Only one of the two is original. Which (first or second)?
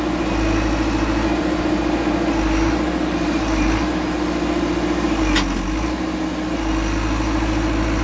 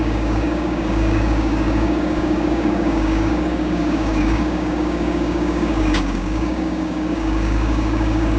first